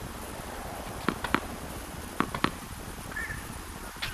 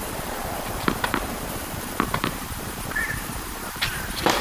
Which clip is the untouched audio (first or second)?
first